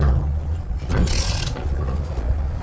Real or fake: fake